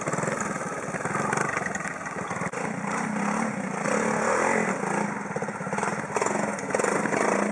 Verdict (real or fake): real